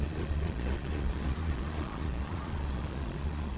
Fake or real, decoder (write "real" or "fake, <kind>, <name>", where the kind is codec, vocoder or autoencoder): fake, vocoder, Vocos